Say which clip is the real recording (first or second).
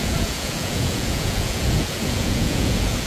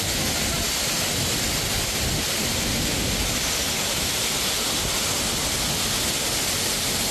second